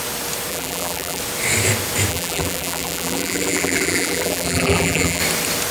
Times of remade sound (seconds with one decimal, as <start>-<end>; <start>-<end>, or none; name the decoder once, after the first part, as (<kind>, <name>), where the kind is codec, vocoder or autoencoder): 0.5-1.2 (vocoder, BigVGAN v2); 2.1-5.2